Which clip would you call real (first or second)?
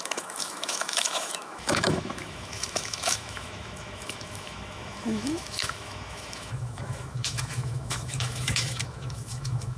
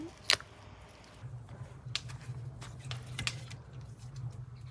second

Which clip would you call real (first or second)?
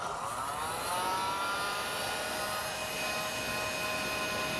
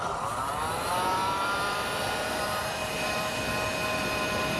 first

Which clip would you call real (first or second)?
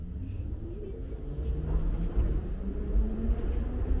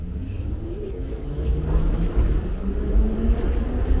first